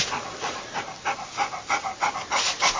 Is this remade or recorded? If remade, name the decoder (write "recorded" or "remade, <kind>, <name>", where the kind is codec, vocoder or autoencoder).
recorded